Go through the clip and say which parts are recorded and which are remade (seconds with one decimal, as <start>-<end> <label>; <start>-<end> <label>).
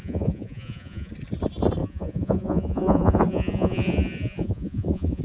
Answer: 0.0-1.1 remade; 1.1-1.8 recorded; 1.8-5.2 remade